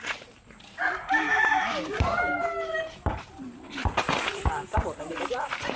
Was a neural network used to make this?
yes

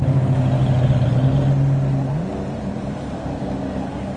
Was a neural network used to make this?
no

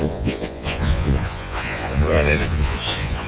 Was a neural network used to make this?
yes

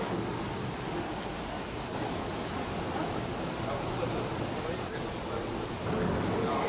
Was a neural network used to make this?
no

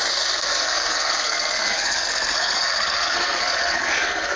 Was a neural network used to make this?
yes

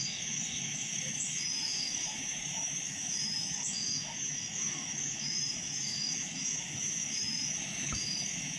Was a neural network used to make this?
yes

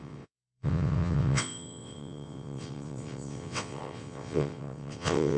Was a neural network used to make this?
yes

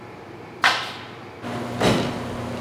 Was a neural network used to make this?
no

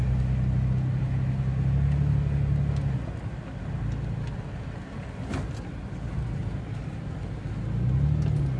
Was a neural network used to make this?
no